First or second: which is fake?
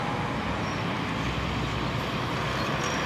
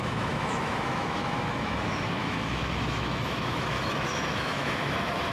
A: second